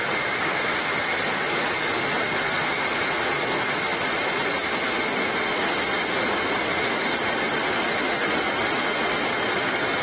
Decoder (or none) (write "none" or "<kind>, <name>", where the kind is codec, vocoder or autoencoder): none